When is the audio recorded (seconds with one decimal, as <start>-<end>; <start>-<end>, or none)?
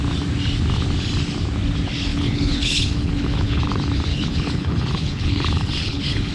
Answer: 0.0-2.1; 3.6-4.1